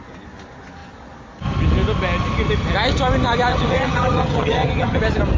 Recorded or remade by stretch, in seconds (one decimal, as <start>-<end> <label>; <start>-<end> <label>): 0.0-3.5 recorded; 3.5-5.0 remade; 5.0-5.4 recorded